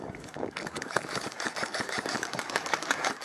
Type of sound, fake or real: fake